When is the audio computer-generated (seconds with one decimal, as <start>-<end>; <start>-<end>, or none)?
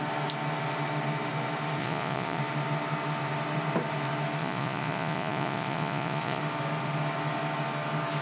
1.8-2.4; 4.4-6.4